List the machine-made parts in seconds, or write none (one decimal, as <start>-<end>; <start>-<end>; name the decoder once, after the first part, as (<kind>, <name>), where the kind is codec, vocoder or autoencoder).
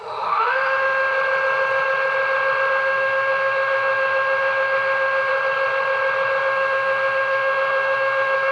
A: 0.0-1.1 (autoencoder, DAC-VAE); 2.7-5.3; 6.4-8.5